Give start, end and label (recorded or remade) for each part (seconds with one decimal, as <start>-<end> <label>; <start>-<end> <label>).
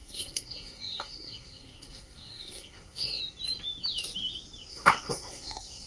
0.0-3.2 remade; 3.2-4.7 recorded; 4.7-5.9 remade